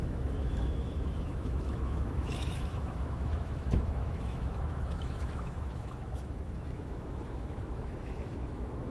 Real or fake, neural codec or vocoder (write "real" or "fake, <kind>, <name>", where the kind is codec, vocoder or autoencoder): fake, autoencoder, DAC-VAE